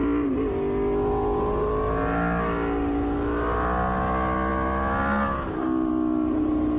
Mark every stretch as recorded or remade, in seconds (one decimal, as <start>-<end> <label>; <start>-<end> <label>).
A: 0.0-6.8 recorded